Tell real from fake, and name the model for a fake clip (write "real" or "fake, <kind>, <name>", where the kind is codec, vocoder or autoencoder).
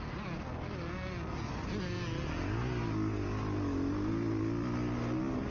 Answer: real